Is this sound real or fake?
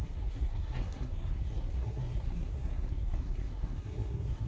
fake